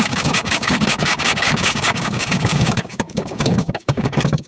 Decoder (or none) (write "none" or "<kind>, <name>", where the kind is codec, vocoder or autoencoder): codec, DAC